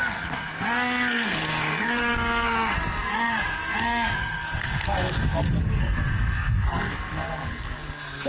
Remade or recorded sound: remade